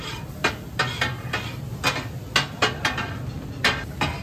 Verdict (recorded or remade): recorded